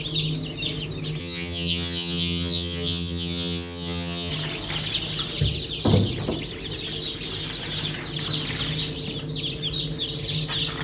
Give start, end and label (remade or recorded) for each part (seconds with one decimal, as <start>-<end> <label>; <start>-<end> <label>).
0.0-1.2 recorded; 1.2-4.3 remade; 4.3-10.8 recorded